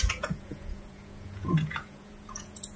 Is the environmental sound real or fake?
fake